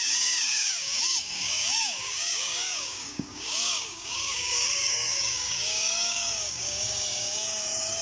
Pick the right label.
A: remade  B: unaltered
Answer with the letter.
A